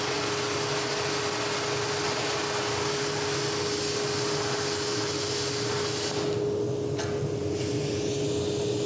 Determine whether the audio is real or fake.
real